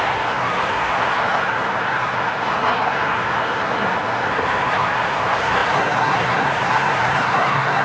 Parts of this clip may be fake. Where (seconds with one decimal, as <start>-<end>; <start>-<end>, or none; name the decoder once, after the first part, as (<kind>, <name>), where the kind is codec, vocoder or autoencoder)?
0.0-7.8 (codec, SNAC)